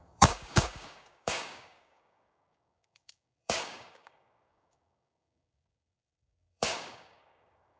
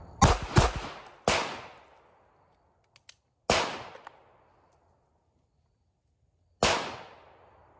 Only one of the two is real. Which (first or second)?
second